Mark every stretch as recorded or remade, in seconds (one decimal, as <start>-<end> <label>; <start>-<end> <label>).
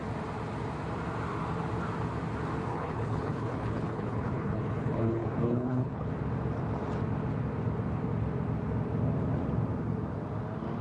0.0-2.7 recorded; 2.7-6.1 remade; 6.1-10.8 recorded